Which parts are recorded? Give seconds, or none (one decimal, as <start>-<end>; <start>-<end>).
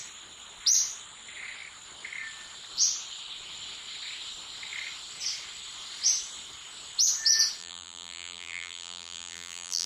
0.0-7.6